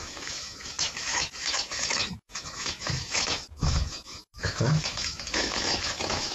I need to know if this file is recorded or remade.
remade